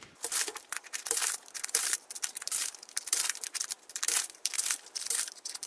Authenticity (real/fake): fake